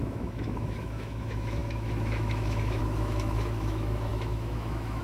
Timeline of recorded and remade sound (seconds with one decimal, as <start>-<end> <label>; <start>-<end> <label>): 0.0-5.0 remade